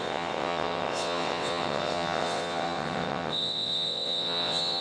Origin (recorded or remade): remade